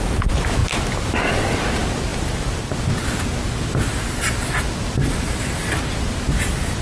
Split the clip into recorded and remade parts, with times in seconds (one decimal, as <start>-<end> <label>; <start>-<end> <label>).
0.0-6.8 recorded